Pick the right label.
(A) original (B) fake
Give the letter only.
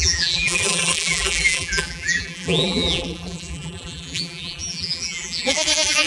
B